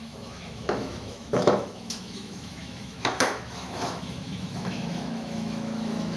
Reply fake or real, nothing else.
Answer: fake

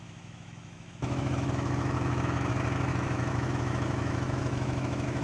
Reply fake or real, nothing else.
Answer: fake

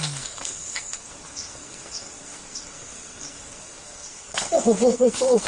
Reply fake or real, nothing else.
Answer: fake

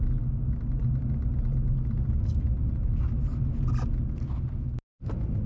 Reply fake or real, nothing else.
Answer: real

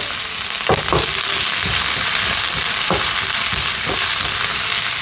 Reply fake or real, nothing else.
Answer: fake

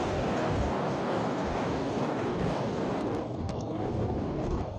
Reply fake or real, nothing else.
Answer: fake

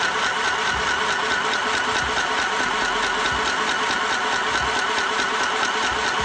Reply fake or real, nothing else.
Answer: real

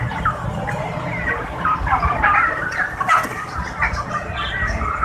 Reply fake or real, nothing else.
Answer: real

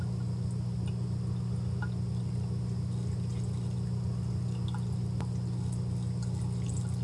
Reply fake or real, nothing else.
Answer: real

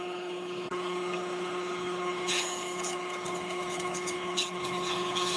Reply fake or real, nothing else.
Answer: fake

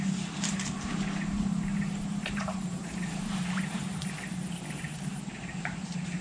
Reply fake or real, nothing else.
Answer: fake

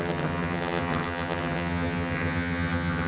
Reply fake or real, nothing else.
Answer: fake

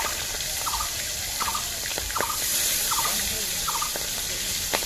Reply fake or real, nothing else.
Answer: fake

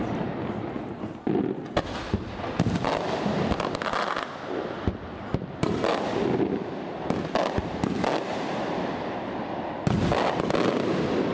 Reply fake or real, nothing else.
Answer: real